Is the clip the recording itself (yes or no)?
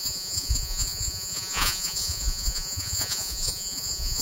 no